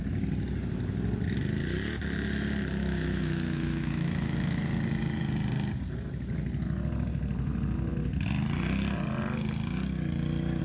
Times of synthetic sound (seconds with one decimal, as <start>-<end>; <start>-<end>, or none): 2.8-4.6